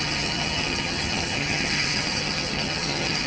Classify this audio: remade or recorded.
remade